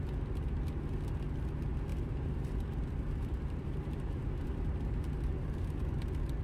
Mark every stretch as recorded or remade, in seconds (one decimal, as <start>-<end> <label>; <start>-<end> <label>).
0.0-1.9 recorded; 1.9-5.7 remade; 5.7-6.4 recorded